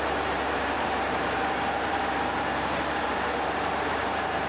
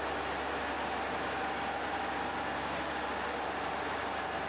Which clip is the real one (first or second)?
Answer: second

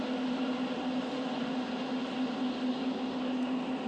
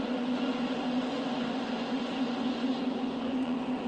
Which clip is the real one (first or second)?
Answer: first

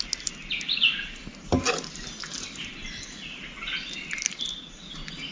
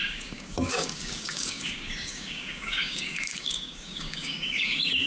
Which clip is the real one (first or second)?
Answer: first